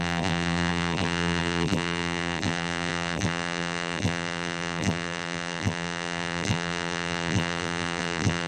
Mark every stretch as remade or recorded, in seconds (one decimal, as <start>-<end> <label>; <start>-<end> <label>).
0.0-8.5 remade